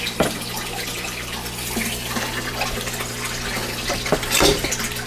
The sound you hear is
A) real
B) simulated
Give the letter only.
A